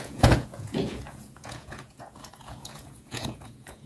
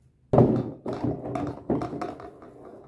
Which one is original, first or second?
second